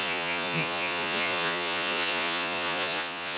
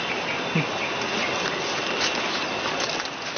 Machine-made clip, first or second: first